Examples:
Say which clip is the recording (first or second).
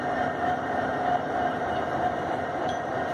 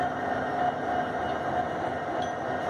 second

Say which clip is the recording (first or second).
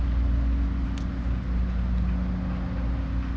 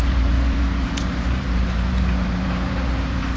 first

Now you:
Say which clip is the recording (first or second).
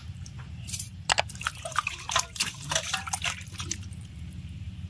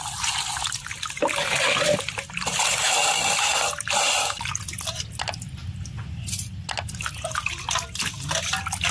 second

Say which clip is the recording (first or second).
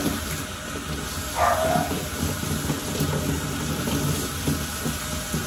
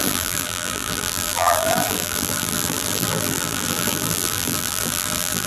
first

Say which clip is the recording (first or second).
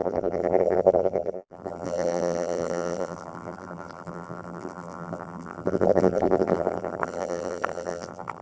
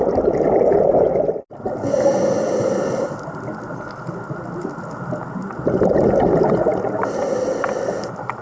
second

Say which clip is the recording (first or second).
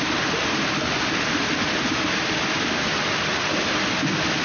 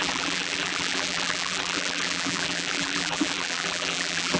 first